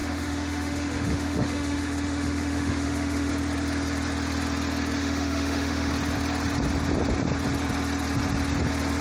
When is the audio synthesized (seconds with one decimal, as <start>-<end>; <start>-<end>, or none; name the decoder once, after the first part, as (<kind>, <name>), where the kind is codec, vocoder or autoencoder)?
0.0-3.3 (autoencoder, DAC-VAE); 5.0-5.9